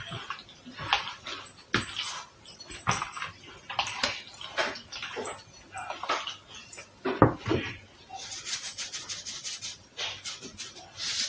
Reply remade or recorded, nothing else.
recorded